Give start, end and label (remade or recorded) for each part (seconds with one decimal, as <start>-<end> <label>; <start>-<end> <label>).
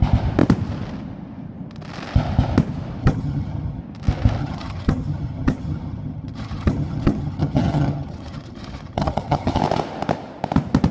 0.0-3.0 recorded; 3.0-3.8 remade; 3.8-4.4 recorded; 4.4-9.6 remade; 9.6-10.9 recorded